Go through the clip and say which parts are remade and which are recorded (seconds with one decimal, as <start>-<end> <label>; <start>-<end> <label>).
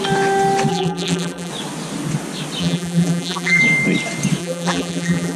0.0-0.7 recorded; 0.7-1.5 remade; 1.5-2.6 recorded; 2.6-3.6 remade; 3.6-4.4 recorded; 4.4-5.4 remade